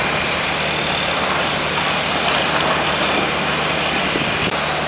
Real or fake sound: real